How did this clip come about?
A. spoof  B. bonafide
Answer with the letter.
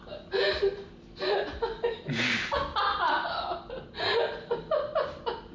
B